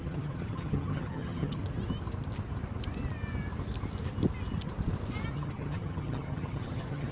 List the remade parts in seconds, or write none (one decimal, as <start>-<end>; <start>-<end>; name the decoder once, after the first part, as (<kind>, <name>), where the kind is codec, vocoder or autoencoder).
0.0-1.6 (vocoder, HiFi-GAN); 5.3-7.1